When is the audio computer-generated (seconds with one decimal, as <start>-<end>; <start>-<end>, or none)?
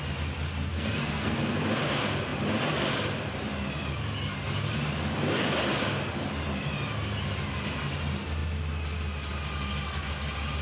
0.7-1.6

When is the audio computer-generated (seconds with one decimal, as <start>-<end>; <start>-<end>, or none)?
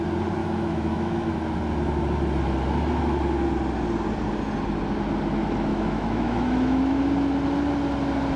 0.4-1.3; 5.7-7.0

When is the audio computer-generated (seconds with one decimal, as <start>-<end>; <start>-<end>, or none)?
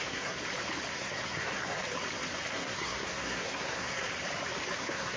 0.0-0.4; 0.9-1.8; 2.5-4.1; 4.8-5.2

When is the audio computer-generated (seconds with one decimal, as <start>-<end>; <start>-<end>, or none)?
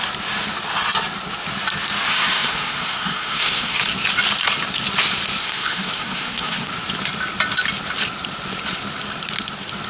2.1-3.8; 5.4-6.7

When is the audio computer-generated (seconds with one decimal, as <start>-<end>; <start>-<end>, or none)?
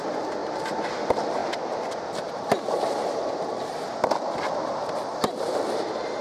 none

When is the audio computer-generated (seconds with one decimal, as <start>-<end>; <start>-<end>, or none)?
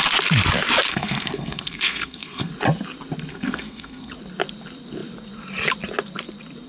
0.9-2.5; 3.3-4.1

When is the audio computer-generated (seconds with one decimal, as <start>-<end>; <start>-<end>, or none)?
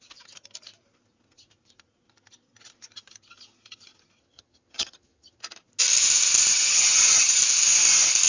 4.2-5.4; 6.5-7.4